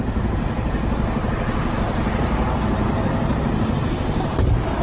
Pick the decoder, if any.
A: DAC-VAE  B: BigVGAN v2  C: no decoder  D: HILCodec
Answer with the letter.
B